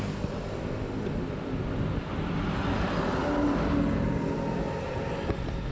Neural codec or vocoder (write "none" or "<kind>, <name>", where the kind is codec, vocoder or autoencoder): none